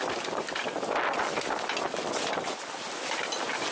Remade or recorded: recorded